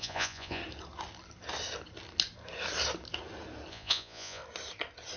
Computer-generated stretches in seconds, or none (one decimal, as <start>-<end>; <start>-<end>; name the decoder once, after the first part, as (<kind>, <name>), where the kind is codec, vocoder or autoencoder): 0.0-0.6 (vocoder, Vocos); 3.7-4.4